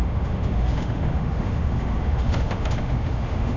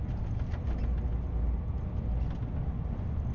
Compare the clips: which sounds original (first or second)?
second